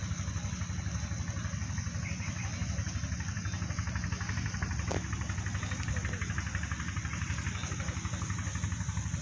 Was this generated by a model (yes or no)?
no